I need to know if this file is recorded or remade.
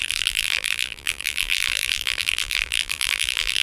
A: remade